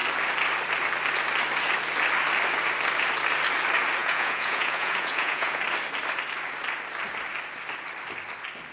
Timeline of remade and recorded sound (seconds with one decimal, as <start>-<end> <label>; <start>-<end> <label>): 0.0-4.0 recorded; 4.0-5.6 remade; 5.6-8.7 recorded